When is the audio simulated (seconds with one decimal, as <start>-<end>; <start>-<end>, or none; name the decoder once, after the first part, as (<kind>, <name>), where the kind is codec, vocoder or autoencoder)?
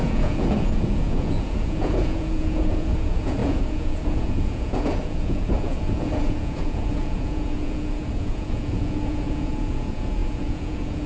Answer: 0.0-11.1 (vocoder, Vocos)